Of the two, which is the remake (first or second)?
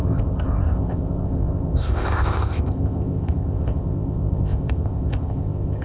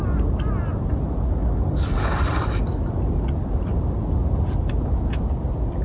first